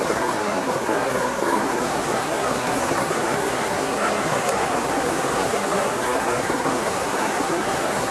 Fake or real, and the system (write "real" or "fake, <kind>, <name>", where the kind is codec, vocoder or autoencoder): fake, codec, SNAC